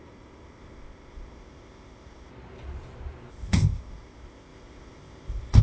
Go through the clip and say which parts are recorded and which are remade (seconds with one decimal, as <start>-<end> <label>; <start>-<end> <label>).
0.0-2.3 remade; 2.3-3.3 recorded; 3.3-5.6 remade

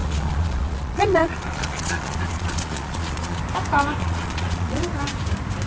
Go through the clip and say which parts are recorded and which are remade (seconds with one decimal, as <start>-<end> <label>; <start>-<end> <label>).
0.0-3.4 remade; 3.4-4.0 recorded; 4.0-4.8 remade; 4.8-5.7 recorded

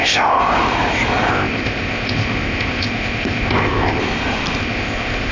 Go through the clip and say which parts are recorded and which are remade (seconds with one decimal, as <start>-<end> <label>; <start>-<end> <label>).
0.0-0.4 remade; 0.4-1.3 recorded; 1.3-4.0 remade; 4.0-4.6 recorded; 4.6-5.3 remade

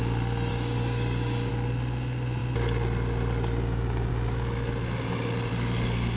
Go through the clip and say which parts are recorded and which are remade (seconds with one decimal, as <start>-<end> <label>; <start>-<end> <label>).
0.0-0.5 recorded; 0.5-1.5 remade; 1.5-6.2 recorded

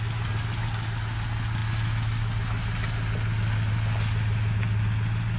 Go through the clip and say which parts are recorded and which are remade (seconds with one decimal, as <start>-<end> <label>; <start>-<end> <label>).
0.0-5.4 recorded

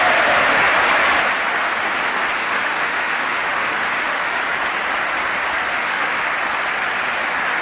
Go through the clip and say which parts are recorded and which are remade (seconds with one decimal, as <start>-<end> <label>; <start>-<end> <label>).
0.0-2.4 recorded; 2.4-4.4 remade; 4.4-5.7 recorded; 5.7-6.2 remade; 6.2-7.6 recorded

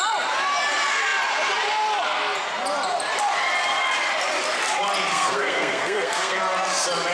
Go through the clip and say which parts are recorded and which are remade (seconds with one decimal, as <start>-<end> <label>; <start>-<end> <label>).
0.0-5.1 recorded; 5.1-6.4 remade; 6.4-7.1 recorded